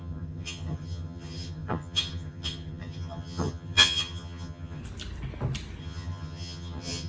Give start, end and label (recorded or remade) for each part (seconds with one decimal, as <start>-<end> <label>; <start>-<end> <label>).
0.0-4.8 remade; 4.8-5.8 recorded; 5.8-7.1 remade